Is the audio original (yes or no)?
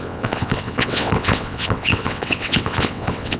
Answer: no